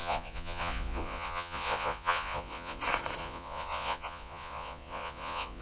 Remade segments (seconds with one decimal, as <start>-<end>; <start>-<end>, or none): 0.0-2.8; 3.2-5.6